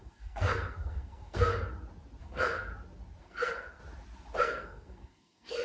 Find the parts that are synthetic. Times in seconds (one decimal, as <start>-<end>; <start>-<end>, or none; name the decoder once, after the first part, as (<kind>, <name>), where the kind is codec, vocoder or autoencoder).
0.0-1.5 (codec, SNAC); 2.2-2.7; 3.2-3.8; 4.4-5.6

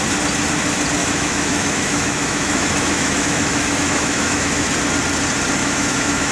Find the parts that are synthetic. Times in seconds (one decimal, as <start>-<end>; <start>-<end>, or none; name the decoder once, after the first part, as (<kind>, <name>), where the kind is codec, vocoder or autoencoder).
1.0-4.7 (autoencoder, DAC-VAE); 5.6-6.3

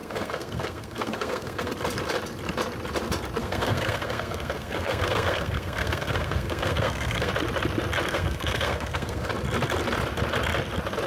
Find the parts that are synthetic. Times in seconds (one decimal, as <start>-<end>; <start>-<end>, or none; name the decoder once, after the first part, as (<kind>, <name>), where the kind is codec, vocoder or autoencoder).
0.0-1.7 (codec, SNAC); 3.4-7.3; 8.1-9.3

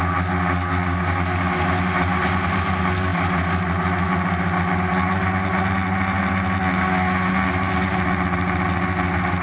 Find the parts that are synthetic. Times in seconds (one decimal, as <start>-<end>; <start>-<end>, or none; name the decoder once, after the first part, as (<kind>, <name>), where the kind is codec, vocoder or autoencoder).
none

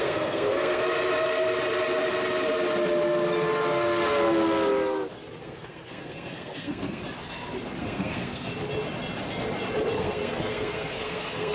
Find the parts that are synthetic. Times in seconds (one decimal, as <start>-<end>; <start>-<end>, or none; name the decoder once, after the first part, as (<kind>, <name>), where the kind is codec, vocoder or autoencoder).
0.0-0.8 (codec, SNAC); 5.4-7.0; 7.8-8.5; 10.0-11.5

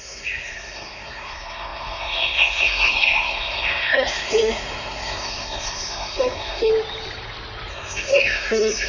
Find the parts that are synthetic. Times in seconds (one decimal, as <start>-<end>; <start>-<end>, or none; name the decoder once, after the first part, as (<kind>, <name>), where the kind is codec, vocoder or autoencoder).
0.0-6.7 (codec, SNAC); 7.7-8.9

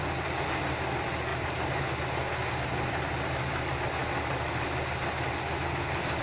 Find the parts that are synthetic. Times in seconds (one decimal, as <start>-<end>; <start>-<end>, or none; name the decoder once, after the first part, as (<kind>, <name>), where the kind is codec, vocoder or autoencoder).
1.3-1.8 (vocoder, BigVGAN v2)

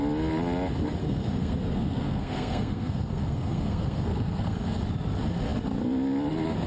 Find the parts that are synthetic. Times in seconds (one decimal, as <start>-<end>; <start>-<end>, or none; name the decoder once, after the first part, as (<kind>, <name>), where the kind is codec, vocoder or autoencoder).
1.0-4.8 (codec, SNAC)